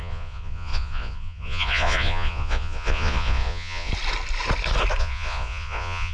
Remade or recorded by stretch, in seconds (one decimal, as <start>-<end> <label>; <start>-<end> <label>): 0.0-3.9 remade; 3.9-5.0 recorded; 5.0-6.1 remade